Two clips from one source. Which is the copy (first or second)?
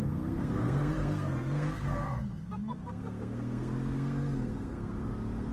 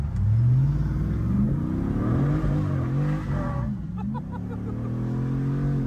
first